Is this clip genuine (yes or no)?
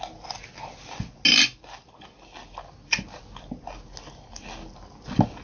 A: yes